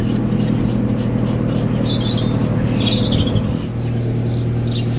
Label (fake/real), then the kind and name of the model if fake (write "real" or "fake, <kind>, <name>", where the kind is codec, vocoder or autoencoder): real